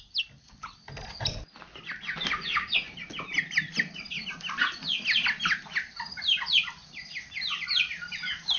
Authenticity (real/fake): real